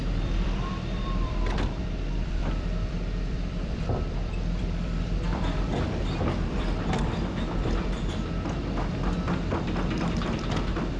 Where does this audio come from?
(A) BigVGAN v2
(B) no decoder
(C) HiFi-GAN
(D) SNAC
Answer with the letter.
A